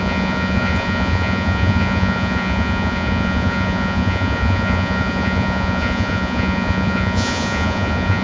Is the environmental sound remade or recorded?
remade